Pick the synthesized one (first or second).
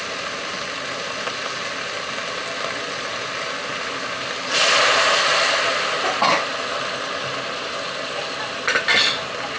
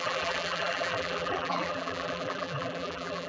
second